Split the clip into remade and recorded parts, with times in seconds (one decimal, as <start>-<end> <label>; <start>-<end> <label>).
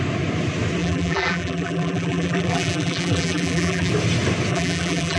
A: 0.0-0.8 recorded; 0.8-3.9 remade; 3.9-4.5 recorded; 4.5-5.2 remade